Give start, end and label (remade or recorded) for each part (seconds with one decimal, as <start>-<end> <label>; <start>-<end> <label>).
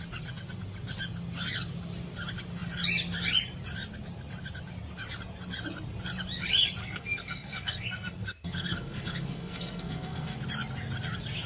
0.0-6.8 recorded; 6.8-10.4 remade; 10.4-11.5 recorded